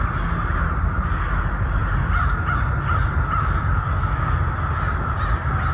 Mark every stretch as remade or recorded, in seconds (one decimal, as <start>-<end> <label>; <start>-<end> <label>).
0.0-5.7 recorded